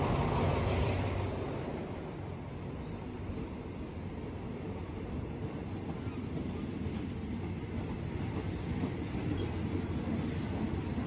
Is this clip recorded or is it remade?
recorded